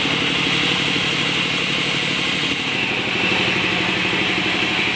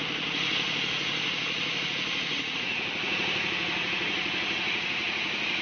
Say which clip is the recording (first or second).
first